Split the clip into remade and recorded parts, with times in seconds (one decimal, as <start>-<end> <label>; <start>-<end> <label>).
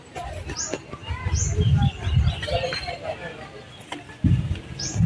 0.0-5.1 recorded